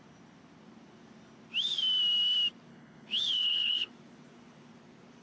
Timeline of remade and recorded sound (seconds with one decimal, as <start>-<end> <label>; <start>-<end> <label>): 0.0-2.7 recorded; 2.7-3.9 remade; 3.9-5.2 recorded